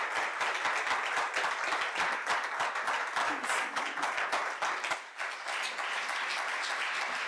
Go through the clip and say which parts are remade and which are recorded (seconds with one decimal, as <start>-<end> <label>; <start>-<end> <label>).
0.0-3.2 recorded; 3.2-3.8 remade; 3.8-7.3 recorded

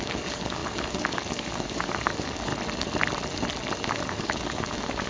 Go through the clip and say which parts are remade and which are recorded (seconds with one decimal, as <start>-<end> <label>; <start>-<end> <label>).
0.0-2.5 remade; 2.5-3.9 recorded; 3.9-5.1 remade